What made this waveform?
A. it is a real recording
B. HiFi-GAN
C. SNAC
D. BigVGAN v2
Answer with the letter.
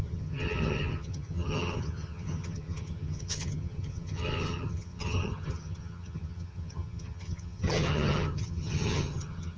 B